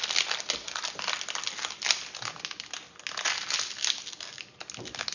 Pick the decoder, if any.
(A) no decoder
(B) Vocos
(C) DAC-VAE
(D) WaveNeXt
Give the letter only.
A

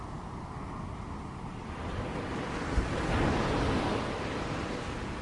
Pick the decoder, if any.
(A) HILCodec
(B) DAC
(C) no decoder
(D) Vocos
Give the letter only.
C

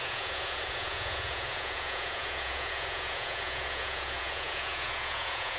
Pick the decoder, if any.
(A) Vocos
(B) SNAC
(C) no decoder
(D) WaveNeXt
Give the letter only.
A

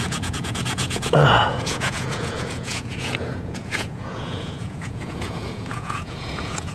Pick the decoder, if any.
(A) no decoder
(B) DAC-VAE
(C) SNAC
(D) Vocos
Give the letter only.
D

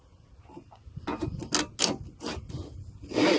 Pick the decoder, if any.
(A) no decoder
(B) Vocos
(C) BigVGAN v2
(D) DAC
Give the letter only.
A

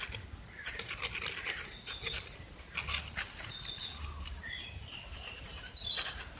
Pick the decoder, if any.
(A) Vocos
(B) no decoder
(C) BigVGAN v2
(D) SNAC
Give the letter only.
B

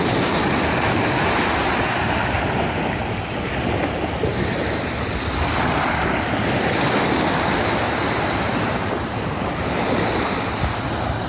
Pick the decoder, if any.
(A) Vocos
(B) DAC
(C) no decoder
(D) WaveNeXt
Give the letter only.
C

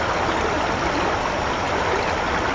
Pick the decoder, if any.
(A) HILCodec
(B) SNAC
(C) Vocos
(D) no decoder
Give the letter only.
D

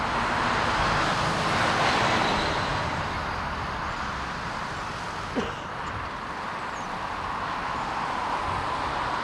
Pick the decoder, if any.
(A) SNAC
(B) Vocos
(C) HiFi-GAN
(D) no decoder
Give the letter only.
D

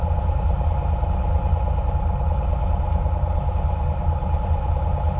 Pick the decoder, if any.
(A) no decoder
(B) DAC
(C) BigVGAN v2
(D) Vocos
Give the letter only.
A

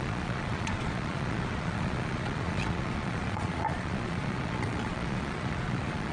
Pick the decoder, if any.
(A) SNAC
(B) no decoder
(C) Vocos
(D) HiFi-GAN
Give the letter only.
C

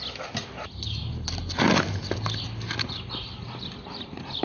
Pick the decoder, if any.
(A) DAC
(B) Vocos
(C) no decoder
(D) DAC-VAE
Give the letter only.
C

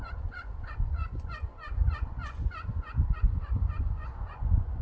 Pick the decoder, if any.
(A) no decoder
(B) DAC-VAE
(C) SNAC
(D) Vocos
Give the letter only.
D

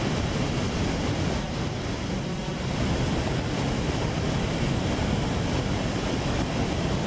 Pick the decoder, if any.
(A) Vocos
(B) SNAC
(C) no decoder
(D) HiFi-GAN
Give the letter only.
C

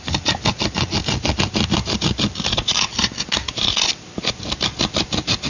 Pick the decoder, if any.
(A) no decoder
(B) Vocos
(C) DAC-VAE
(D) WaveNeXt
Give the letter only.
A